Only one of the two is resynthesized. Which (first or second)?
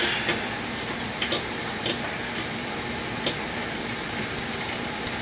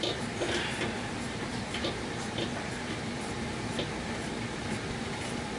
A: second